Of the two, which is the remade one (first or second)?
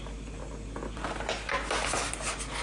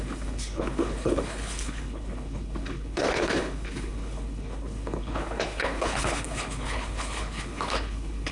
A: second